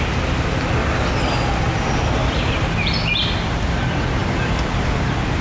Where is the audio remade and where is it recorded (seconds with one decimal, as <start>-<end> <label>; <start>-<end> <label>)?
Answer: 0.0-5.4 recorded